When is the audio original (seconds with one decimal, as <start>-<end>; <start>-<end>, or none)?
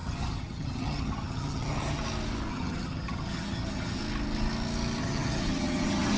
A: 2.0-2.5; 4.0-5.0